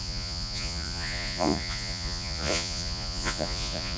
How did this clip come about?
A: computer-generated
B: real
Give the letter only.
A